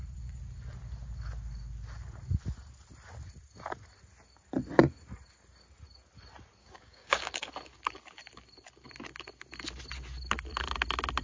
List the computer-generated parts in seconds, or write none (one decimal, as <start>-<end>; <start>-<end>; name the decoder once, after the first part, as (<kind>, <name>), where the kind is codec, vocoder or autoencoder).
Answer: 6.6-7.5 (codec, DAC)